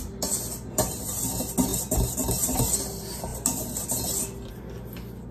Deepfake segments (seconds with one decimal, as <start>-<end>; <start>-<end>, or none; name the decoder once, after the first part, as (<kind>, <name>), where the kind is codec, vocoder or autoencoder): none